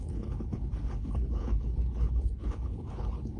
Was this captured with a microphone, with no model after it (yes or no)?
no